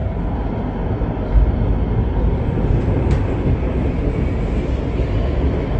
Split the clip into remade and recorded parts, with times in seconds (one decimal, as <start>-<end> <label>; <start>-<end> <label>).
0.0-5.8 recorded